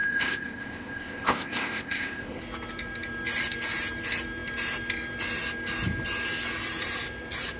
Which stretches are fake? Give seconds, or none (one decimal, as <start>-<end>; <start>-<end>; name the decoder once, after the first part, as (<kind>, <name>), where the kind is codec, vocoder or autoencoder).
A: 0.0-2.4 (codec, ZipCodec)